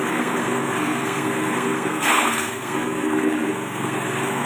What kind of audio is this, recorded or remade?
remade